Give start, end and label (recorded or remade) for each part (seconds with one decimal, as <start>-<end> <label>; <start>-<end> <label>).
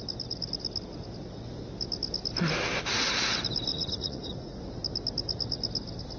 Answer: 0.0-3.7 recorded; 3.7-4.6 remade; 4.6-6.2 recorded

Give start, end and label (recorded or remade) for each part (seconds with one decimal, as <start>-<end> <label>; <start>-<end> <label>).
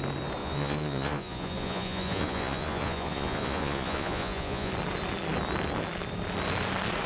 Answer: 0.0-0.4 recorded; 0.4-4.7 remade; 4.7-7.1 recorded